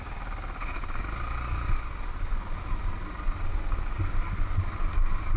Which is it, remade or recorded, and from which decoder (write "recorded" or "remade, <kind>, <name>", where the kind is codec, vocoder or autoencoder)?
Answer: recorded